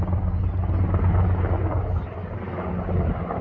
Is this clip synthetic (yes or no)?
no